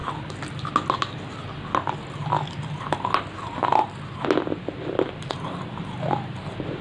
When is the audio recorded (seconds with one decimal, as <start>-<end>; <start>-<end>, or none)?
0.0-6.8